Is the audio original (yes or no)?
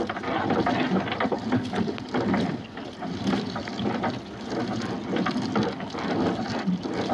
yes